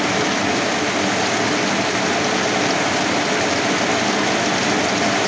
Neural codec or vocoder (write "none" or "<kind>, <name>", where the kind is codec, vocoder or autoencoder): none